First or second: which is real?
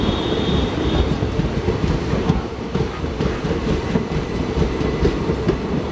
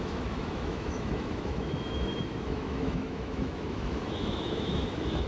first